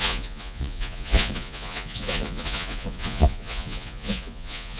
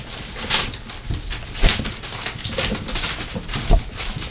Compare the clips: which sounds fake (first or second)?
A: first